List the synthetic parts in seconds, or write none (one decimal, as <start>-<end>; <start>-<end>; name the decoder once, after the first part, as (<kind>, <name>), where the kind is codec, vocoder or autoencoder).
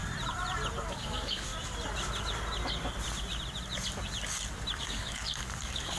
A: 0.9-1.5 (codec, DAC); 4.8-6.0